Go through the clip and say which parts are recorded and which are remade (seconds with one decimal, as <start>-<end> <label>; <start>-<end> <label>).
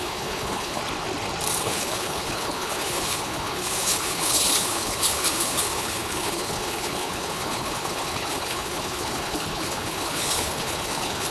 0.0-0.8 remade; 0.8-1.6 recorded; 1.6-11.3 remade